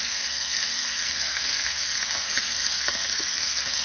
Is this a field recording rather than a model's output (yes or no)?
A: no